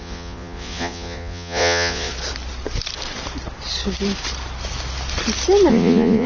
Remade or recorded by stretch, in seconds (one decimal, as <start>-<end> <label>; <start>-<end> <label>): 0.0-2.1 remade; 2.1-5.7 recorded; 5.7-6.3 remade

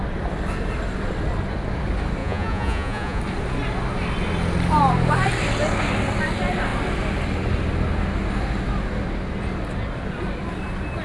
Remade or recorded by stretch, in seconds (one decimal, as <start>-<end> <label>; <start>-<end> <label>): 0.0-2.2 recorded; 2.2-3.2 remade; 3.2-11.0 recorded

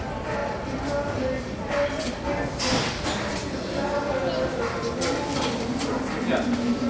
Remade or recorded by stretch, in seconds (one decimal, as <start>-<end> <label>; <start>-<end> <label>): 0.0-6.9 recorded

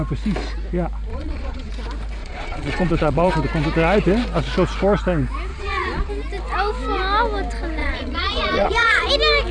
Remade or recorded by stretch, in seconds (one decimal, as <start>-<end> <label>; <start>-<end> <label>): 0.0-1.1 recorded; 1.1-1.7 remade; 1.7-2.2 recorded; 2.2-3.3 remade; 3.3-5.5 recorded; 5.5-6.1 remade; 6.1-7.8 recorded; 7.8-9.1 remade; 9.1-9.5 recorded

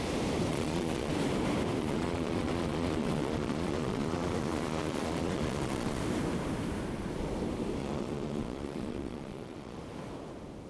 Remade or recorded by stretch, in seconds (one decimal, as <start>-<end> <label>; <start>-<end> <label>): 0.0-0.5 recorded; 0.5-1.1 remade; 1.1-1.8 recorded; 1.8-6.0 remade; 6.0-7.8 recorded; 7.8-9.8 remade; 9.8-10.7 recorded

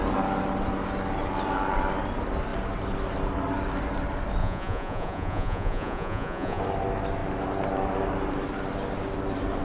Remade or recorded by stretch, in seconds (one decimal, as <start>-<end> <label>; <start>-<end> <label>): 0.0-4.4 recorded; 4.4-6.6 remade; 6.6-9.6 recorded

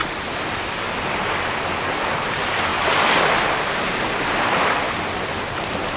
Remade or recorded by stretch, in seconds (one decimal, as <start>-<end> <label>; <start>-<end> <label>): 0.0-6.0 recorded